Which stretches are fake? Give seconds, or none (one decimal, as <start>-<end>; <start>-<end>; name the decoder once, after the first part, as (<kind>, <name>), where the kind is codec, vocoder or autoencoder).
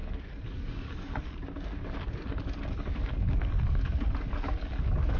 0.0-5.2 (codec, DAC)